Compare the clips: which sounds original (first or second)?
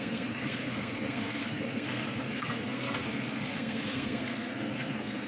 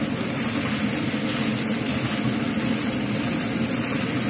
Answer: second